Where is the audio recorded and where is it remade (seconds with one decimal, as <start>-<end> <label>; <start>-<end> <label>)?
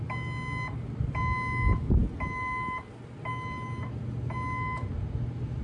0.0-5.6 recorded